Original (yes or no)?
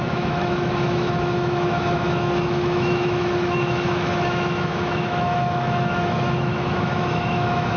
no